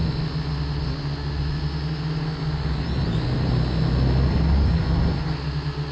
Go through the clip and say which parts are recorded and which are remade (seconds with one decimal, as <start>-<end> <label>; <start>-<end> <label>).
0.0-5.9 recorded